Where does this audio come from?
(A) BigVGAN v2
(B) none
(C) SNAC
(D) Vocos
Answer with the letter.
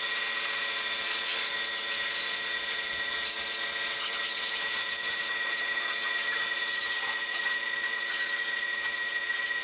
D